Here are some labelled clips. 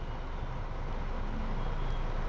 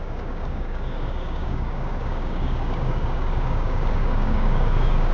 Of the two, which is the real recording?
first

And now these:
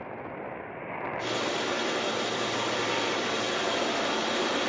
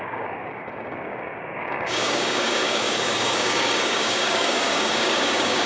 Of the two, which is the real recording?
first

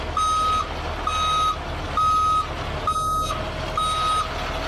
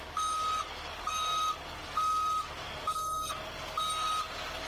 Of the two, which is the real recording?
first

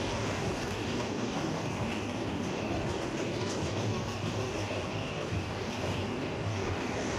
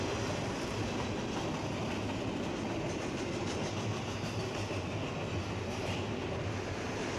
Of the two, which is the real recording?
second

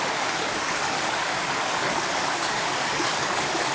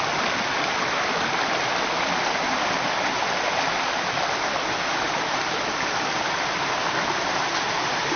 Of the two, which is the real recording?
second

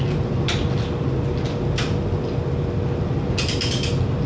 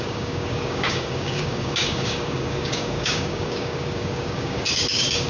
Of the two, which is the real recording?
first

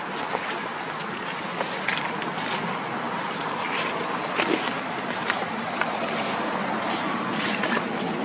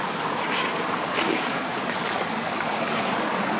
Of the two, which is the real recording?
first